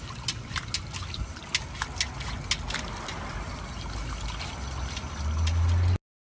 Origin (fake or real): real